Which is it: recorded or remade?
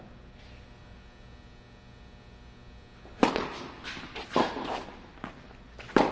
recorded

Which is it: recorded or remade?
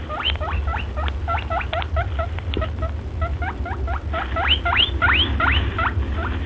recorded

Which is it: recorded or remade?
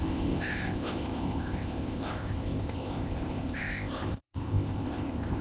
remade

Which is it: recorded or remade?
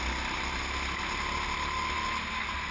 recorded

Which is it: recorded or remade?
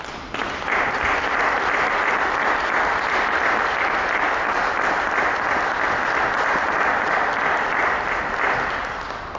recorded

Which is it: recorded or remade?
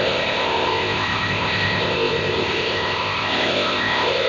remade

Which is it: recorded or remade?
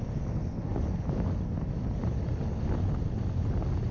recorded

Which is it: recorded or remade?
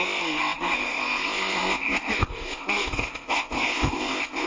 remade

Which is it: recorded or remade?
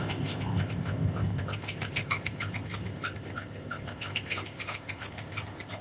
remade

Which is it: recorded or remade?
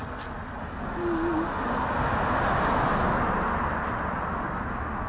recorded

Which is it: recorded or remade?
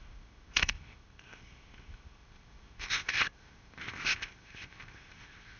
remade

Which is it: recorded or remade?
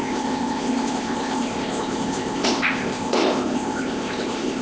remade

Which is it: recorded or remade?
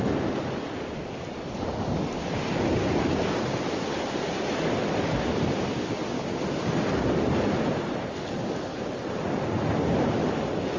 recorded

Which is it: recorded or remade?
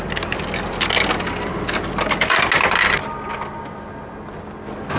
recorded